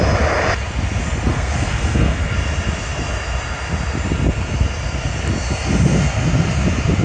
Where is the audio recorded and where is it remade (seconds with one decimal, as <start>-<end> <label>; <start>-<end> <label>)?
0.0-1.3 recorded; 1.3-2.3 remade; 2.3-7.0 recorded